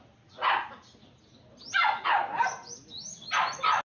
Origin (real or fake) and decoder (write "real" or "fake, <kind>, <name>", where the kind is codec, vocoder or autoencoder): real